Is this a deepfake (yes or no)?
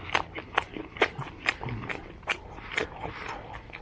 yes